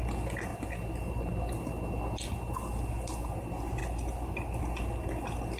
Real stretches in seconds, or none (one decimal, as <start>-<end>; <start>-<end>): 0.0-5.6